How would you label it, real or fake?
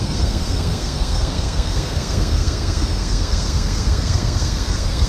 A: fake